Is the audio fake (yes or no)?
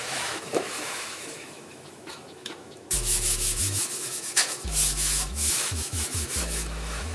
yes